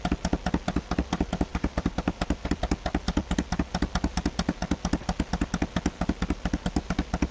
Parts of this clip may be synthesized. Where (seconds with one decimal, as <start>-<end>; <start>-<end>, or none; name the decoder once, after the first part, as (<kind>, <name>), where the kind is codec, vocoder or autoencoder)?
1.5-2.6 (vocoder, BigVGAN v2)